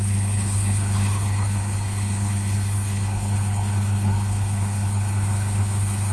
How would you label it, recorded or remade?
remade